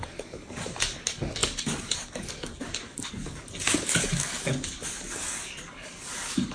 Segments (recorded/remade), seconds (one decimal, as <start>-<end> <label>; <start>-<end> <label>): 0.0-6.5 remade